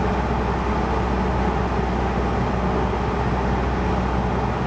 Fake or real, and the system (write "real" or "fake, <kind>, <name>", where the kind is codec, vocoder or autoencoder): real